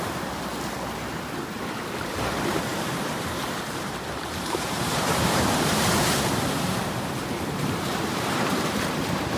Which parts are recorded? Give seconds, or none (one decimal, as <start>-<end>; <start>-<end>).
0.5-2.1